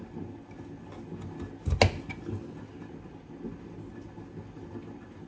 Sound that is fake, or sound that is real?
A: real